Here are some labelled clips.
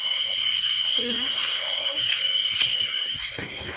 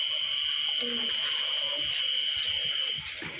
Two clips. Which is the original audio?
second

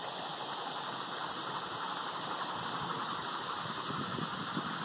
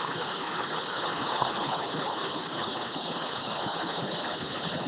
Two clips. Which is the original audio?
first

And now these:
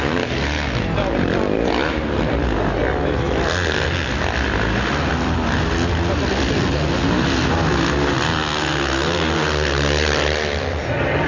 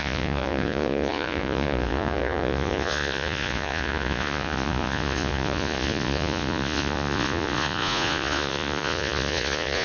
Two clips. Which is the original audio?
first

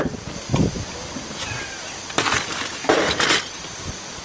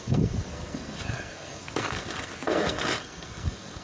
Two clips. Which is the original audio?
first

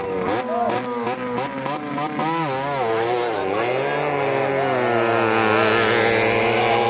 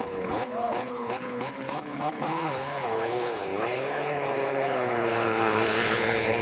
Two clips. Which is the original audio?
first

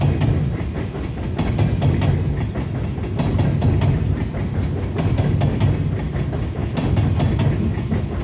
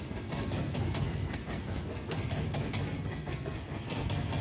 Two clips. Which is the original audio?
first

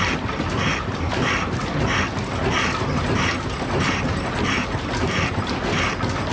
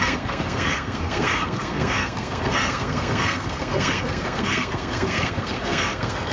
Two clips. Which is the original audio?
first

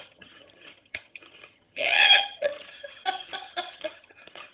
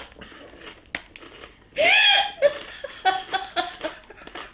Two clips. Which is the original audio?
second